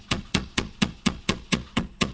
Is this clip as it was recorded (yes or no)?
no